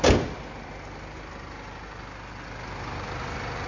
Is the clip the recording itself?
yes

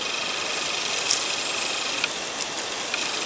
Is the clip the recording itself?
yes